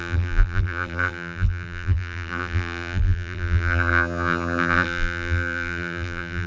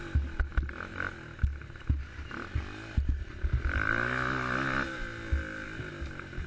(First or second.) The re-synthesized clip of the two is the first